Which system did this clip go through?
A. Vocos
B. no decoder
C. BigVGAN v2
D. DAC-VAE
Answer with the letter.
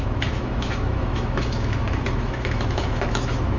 D